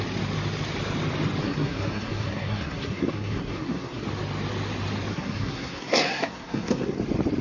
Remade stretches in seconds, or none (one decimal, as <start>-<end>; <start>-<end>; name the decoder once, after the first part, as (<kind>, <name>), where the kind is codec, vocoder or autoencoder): 1.4-4.0 (codec, SNAC); 5.1-7.0

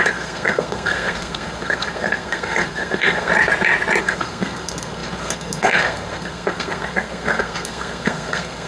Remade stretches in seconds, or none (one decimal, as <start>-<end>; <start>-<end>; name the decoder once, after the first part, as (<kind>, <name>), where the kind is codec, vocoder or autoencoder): 0.0-3.3 (codec, SNAC); 4.0-8.7